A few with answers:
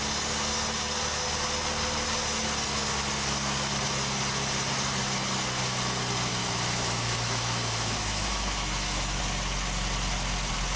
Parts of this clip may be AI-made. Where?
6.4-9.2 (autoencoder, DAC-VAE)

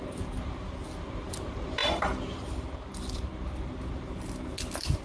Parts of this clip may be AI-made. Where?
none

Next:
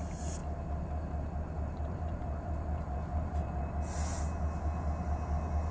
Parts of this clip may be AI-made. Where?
0.4-3.7 (vocoder, BigVGAN v2)

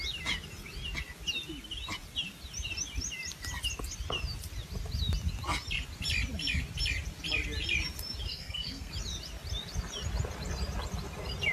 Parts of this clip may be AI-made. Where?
8.3-8.9 (codec, SNAC)